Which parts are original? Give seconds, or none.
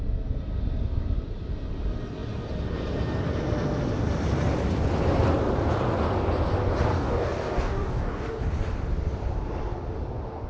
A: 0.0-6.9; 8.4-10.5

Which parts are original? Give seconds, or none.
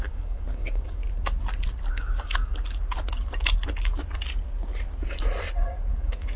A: 1.0-1.9; 2.5-5.9